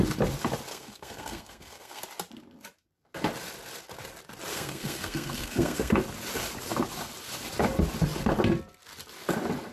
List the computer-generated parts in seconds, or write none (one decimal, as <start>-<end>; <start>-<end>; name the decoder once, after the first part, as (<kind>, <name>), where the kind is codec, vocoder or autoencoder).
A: 0.7-2.0 (codec, SNAC); 4.5-5.9